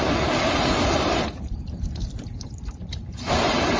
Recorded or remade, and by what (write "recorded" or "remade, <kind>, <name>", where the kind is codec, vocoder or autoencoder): remade, vocoder, BigVGAN v2